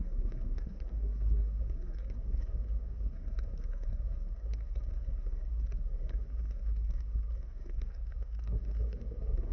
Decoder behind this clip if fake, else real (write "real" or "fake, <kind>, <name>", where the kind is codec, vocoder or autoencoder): fake, codec, SNAC